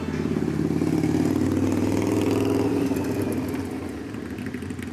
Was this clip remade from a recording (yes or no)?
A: no